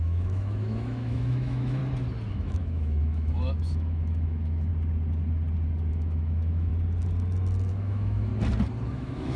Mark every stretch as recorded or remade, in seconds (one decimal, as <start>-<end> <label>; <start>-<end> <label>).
0.0-1.8 remade; 1.8-2.3 recorded; 2.3-4.7 remade; 4.7-5.9 recorded; 5.9-6.7 remade; 6.7-7.7 recorded; 7.7-8.3 remade; 8.3-8.9 recorded; 8.9-9.4 remade